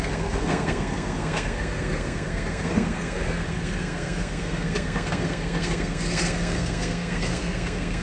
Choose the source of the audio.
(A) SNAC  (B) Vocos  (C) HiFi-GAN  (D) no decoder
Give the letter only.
A